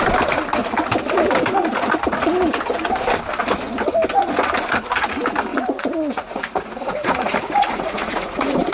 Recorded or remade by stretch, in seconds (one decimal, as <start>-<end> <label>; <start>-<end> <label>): 0.0-5.5 recorded; 5.5-8.7 remade